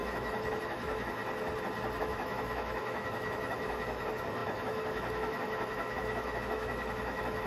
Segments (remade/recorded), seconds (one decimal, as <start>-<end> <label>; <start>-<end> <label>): 0.0-1.2 remade; 1.2-2.0 recorded; 2.0-7.5 remade